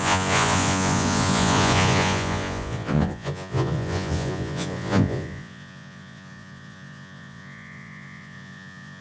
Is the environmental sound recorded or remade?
remade